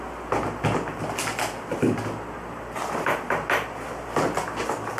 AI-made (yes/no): no